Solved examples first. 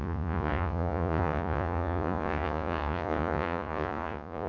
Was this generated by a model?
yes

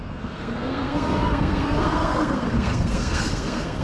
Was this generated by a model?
yes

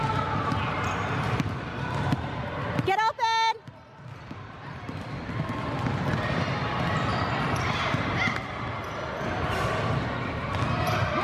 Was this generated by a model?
no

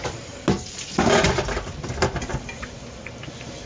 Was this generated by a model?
no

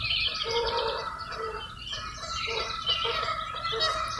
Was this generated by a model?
no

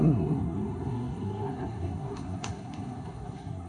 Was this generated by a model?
yes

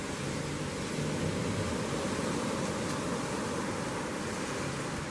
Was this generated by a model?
no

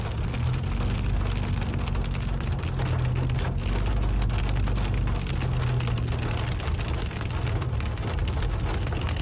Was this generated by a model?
no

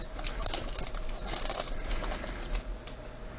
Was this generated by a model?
yes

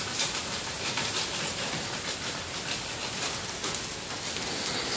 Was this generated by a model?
no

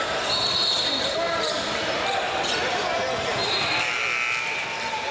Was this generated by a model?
no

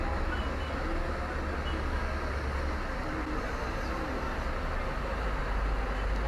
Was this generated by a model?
no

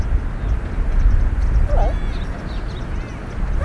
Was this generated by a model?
no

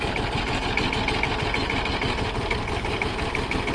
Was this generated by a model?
no